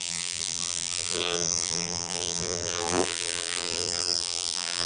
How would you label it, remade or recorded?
remade